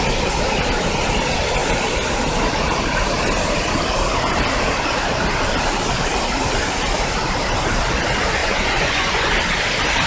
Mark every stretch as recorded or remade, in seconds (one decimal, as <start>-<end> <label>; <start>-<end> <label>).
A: 0.0-8.4 recorded; 8.4-9.3 remade; 9.3-10.1 recorded